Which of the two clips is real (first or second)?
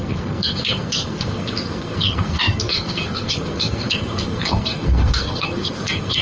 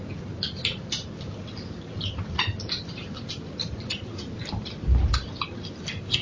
second